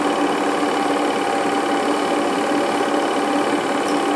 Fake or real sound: real